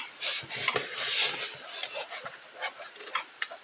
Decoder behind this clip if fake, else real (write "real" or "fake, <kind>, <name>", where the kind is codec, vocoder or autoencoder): real